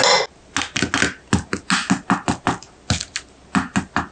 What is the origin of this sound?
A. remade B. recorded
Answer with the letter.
B